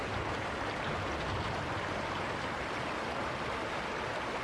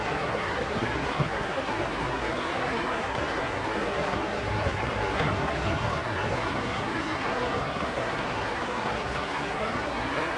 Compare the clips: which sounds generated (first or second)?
second